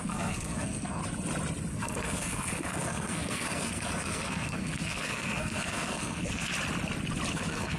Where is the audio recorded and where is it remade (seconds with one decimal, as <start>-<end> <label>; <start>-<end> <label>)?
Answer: 0.0-1.0 remade; 1.0-1.7 recorded; 1.7-6.5 remade; 6.5-7.3 recorded; 7.3-7.8 remade